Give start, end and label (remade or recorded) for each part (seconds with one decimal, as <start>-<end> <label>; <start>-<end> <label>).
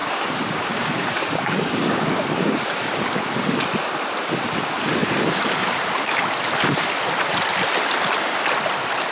0.0-3.5 remade; 3.5-9.1 recorded